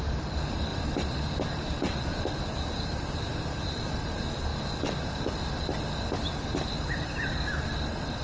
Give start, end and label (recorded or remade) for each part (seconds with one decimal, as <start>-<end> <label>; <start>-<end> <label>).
0.0-0.7 remade; 0.7-2.3 recorded; 2.3-4.5 remade; 4.5-6.8 recorded; 6.8-8.2 remade